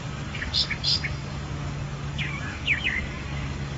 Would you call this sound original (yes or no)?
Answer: no